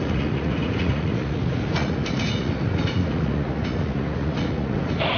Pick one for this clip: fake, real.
fake